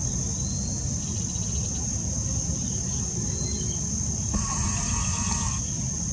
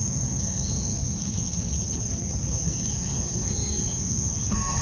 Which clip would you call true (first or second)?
first